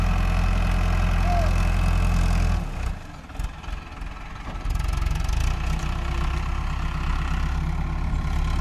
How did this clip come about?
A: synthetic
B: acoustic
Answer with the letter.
B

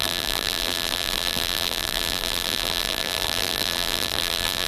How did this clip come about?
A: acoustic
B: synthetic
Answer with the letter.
B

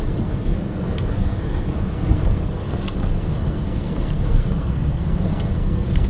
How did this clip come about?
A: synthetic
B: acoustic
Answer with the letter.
A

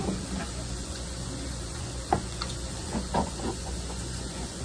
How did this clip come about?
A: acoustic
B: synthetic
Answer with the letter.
B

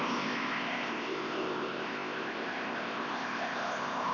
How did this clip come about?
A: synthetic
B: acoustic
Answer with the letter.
A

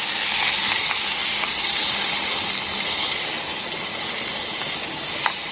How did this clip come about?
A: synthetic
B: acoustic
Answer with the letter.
B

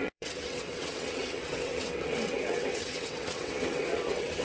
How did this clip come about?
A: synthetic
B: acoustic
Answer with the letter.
A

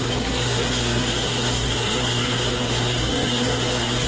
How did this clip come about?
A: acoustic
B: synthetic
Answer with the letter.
B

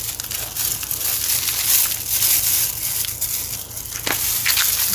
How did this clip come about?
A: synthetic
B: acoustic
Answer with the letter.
B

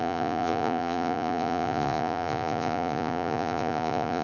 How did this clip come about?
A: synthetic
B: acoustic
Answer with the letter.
A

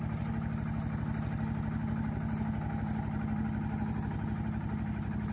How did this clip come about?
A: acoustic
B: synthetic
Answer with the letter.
A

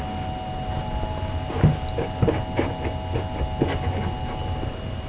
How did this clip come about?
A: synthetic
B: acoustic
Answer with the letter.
B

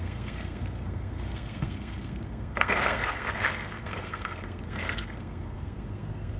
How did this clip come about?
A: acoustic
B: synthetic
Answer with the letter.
B